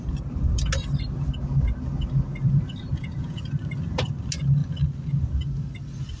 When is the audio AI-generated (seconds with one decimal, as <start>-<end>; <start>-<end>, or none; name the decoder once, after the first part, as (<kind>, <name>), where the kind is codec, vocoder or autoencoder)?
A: 2.9-3.4 (vocoder, Vocos)